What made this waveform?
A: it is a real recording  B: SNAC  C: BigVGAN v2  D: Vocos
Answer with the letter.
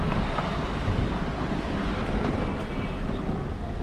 A